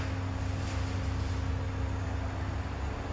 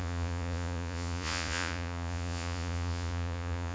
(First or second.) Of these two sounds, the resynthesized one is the second